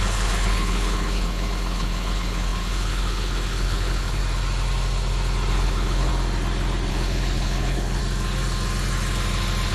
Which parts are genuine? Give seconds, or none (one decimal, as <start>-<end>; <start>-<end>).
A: 4.2-5.5; 6.1-6.9; 8.0-9.7